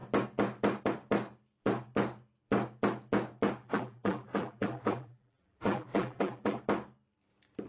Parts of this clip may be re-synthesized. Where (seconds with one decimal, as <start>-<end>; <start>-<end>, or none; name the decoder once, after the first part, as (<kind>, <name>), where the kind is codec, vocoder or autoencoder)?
3.6-6.6 (vocoder, BigVGAN v2)